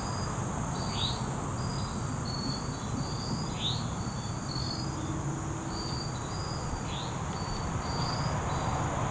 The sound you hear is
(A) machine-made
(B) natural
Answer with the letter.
B